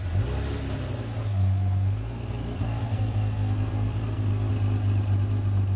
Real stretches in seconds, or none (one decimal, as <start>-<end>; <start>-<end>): 0.0-1.2; 4.5-5.8